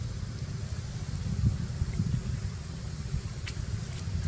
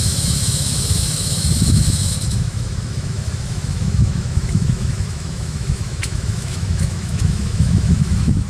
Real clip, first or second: first